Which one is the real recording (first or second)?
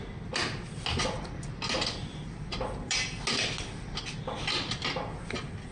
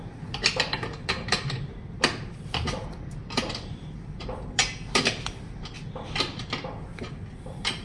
first